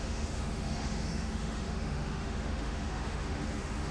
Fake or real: fake